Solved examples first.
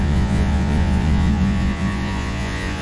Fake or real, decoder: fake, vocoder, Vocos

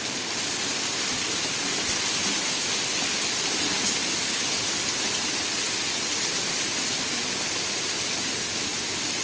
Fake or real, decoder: real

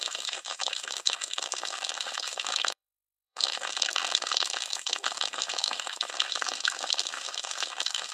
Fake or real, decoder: fake, autoencoder, DAC-VAE